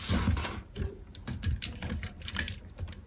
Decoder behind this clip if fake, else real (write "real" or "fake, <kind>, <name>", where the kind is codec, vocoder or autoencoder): fake, vocoder, BigVGAN v2